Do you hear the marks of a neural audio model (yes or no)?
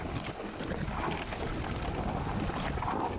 no